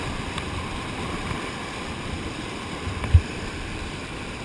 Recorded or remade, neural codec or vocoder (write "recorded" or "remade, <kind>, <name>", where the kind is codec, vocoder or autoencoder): remade, vocoder, BigVGAN v2